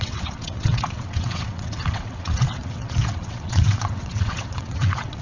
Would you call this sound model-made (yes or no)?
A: yes